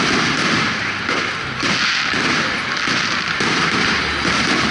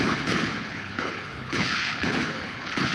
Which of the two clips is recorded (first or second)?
first